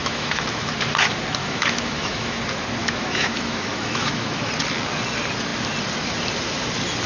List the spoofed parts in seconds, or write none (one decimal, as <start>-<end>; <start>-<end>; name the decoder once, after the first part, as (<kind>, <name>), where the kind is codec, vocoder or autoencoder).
0.0-0.7 (autoencoder, DAC-VAE); 1.4-2.4; 2.8-4.5